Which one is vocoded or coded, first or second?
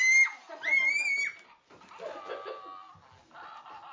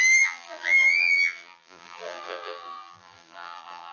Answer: second